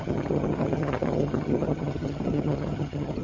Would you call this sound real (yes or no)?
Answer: no